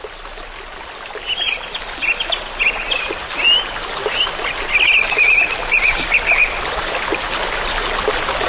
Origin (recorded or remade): recorded